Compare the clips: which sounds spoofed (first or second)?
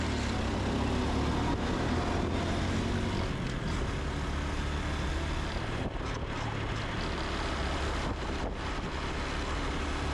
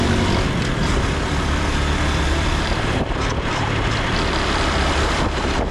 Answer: second